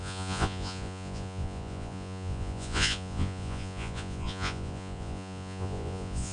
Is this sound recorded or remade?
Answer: remade